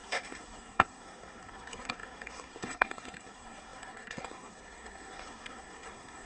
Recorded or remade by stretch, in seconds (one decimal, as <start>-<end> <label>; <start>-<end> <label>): 0.0-6.3 remade

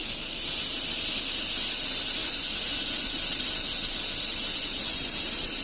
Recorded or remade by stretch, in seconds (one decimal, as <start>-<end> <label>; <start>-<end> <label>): 0.0-2.2 recorded; 2.2-3.1 remade; 3.1-4.5 recorded; 4.5-5.1 remade; 5.1-5.6 recorded